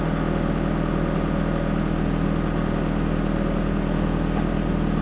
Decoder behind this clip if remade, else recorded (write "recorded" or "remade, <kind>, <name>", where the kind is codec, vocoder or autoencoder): recorded